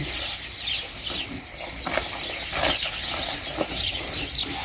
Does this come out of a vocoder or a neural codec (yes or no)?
no